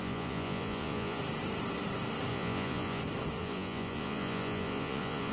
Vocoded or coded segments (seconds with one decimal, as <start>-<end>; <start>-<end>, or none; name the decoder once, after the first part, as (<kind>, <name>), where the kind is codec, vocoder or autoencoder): 0.0-1.2 (vocoder, Vocos); 2.3-3.0; 3.4-5.3